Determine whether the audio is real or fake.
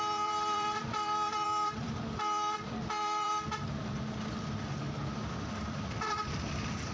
fake